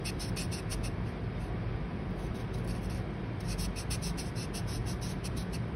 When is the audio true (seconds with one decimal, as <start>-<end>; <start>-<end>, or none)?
0.0-4.8